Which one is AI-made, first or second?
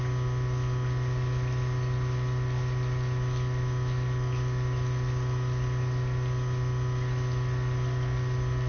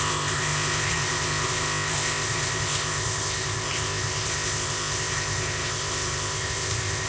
second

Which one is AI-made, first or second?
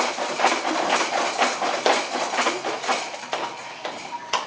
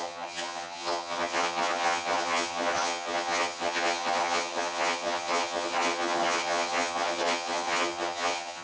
second